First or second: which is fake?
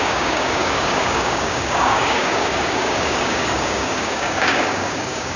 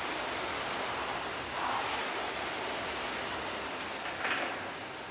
first